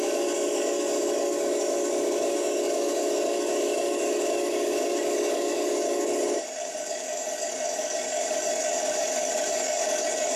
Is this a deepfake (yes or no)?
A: yes